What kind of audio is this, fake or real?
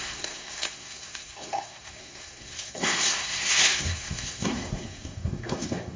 fake